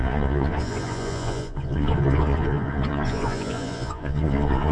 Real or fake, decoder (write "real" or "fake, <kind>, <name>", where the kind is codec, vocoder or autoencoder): fake, vocoder, Vocos